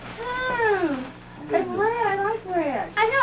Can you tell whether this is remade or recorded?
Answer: remade